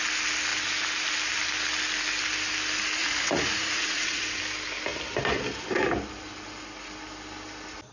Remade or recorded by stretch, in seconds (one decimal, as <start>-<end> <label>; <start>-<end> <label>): 0.0-3.0 recorded; 3.0-4.4 remade; 4.4-7.9 recorded